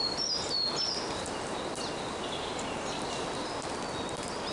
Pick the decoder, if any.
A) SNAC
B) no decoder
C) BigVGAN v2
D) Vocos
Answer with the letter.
B